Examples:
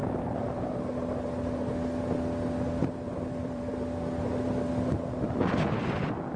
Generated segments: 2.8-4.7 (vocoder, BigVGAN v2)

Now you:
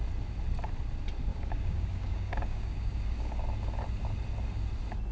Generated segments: 1.3-3.3 (codec, DAC)

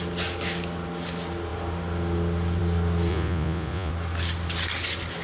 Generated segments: 3.1-3.9 (vocoder, Vocos)